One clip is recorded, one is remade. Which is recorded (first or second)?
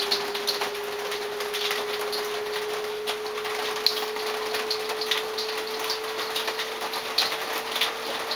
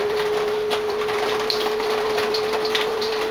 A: first